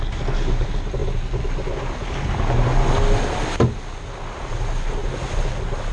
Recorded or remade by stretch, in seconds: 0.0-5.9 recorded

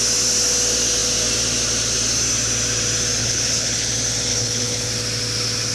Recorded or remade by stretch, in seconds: 0.0-3.2 recorded; 3.2-3.9 remade; 3.9-4.3 recorded; 4.3-4.9 remade; 4.9-5.7 recorded

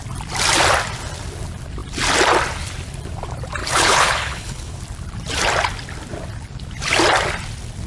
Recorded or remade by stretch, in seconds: 0.0-3.6 recorded; 3.6-4.8 remade; 4.8-7.9 recorded

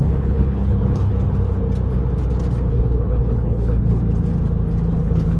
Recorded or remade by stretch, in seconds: 0.0-1.1 remade; 1.1-2.7 recorded; 2.7-4.0 remade; 4.0-4.9 recorded; 4.9-5.4 remade

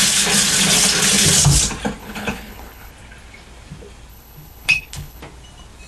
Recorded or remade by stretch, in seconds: 0.0-2.0 recorded; 2.0-2.9 remade; 2.9-4.1 recorded; 4.1-5.2 remade; 5.2-5.9 recorded

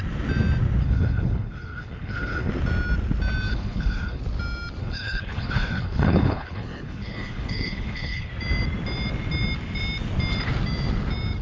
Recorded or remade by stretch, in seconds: 0.0-0.8 recorded; 0.8-2.5 remade; 2.5-3.5 recorded; 3.5-4.2 remade; 4.2-4.8 recorded; 4.8-8.3 remade; 8.3-11.4 recorded

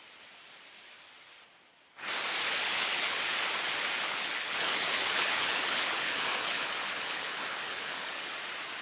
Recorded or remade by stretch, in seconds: 0.0-2.6 recorded; 2.6-3.2 remade; 3.2-4.0 recorded; 4.0-8.3 remade; 8.3-8.8 recorded

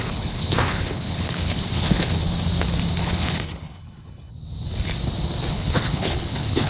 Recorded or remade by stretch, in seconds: 0.0-2.2 remade; 2.2-3.0 recorded; 3.0-4.3 remade; 4.3-5.5 recorded; 5.5-6.7 remade